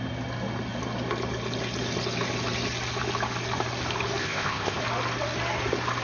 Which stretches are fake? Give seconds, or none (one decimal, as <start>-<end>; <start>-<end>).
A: 4.2-4.8